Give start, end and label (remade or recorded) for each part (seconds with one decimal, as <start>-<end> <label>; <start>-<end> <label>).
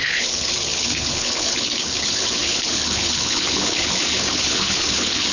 0.0-5.3 remade